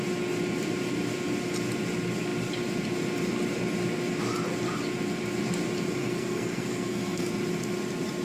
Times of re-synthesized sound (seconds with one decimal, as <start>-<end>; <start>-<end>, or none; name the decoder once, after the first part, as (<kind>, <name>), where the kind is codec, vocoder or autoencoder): 6.0-7.3 (codec, SNAC)